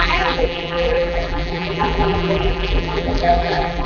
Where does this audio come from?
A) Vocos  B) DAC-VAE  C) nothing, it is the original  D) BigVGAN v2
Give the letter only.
D